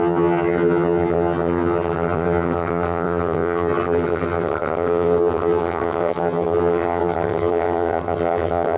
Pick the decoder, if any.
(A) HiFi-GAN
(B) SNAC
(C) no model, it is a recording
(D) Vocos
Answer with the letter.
A